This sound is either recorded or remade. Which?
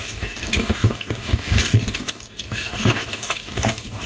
remade